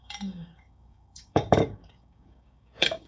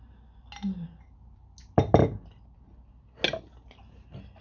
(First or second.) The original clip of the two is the second